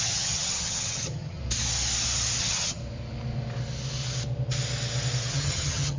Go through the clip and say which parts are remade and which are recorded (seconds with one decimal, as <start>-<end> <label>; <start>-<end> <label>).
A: 0.0-1.4 remade; 1.4-2.4 recorded; 2.4-2.8 remade; 2.8-5.3 recorded; 5.3-6.0 remade